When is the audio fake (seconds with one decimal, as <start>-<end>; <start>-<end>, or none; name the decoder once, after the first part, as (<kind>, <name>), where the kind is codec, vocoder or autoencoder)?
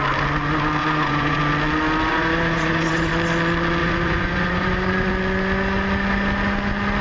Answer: 0.8-1.4 (vocoder, Vocos); 2.1-3.1; 3.8-5.1